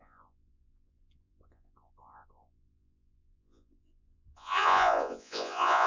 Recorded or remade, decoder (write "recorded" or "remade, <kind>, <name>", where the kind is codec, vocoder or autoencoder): remade, vocoder, Vocos